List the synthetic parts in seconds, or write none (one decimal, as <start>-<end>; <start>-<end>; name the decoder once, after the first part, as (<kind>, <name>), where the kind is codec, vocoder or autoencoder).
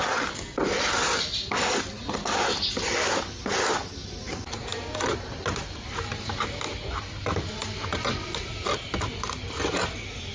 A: none